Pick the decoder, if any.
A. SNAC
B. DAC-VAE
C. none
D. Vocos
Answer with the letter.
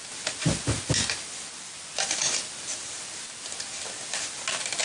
C